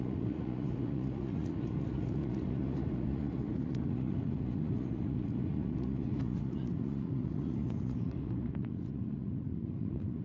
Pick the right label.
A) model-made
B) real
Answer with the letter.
A